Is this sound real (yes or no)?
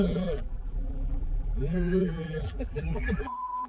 no